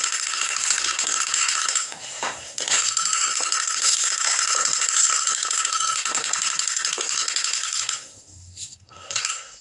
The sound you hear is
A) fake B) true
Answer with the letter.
A